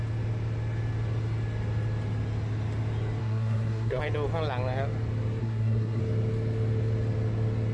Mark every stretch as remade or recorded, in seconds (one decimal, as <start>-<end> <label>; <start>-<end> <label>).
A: 0.0-3.2 recorded; 3.2-4.0 remade; 4.0-5.4 recorded; 5.4-6.0 remade; 6.0-7.7 recorded

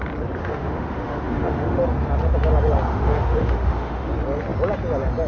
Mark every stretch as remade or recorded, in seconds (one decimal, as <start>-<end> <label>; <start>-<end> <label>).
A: 0.0-0.4 recorded; 0.4-1.8 remade; 1.8-2.9 recorded; 2.9-4.1 remade; 4.1-5.3 recorded

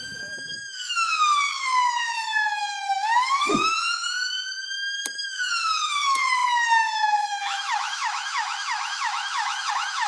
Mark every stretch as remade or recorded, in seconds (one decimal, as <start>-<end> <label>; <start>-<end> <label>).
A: 0.0-10.1 remade

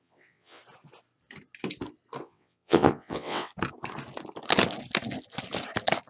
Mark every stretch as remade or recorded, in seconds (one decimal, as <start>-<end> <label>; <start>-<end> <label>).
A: 0.0-0.6 remade; 0.6-2.2 recorded; 2.2-3.5 remade; 3.5-6.1 recorded

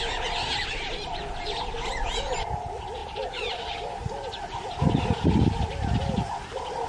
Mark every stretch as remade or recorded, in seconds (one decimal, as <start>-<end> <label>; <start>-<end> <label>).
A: 0.0-3.0 recorded; 3.0-4.4 remade; 4.4-6.9 recorded

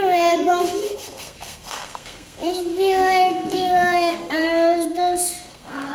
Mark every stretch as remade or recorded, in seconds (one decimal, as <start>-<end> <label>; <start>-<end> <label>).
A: 0.0-5.9 remade

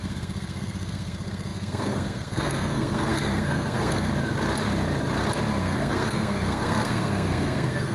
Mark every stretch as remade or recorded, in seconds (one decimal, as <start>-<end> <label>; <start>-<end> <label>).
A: 0.0-4.1 remade; 4.1-5.6 recorded; 5.6-7.9 remade